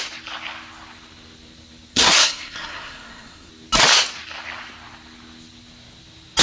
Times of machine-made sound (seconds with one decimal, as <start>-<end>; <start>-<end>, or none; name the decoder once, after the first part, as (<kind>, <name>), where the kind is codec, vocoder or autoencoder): 1.9-3.5 (codec, SNAC)